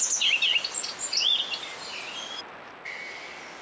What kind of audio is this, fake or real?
real